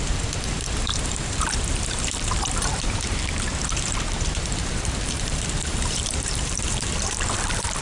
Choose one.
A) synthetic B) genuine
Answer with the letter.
A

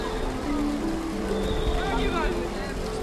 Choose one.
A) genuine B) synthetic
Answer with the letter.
A